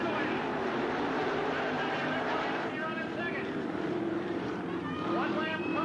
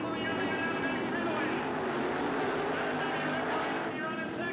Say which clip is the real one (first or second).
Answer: second